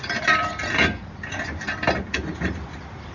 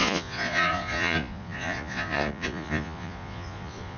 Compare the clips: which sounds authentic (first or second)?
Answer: first